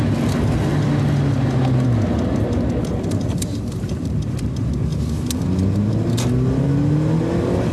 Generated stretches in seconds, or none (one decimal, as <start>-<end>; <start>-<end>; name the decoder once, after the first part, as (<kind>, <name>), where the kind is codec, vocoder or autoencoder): none

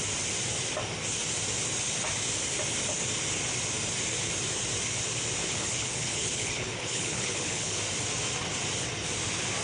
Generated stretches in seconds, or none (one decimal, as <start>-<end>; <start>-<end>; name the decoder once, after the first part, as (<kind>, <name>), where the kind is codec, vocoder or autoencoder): 5.4-7.8 (codec, HILCodec)

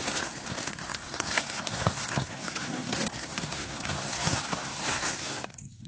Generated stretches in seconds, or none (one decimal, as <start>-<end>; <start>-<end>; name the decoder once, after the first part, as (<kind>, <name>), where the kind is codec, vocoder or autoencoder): 0.0-5.9 (codec, SNAC)

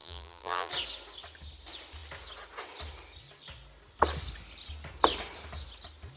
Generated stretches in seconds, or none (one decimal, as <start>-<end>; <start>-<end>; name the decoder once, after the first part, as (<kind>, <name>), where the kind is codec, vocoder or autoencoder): 0.0-0.7 (vocoder, BigVGAN v2)

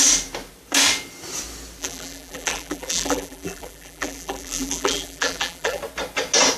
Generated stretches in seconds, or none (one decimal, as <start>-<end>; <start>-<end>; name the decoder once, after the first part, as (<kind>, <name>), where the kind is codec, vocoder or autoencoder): 1.8-5.8 (vocoder, BigVGAN v2)